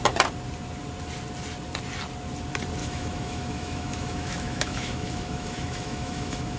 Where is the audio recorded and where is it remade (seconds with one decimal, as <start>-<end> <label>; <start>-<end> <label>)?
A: 0.0-2.8 recorded; 2.8-6.6 remade